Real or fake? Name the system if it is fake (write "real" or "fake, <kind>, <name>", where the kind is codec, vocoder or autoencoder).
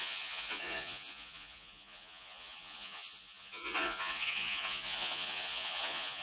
fake, vocoder, Vocos